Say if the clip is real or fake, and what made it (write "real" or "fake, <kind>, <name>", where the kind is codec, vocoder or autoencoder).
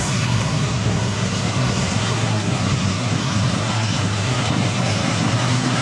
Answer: fake, codec, SNAC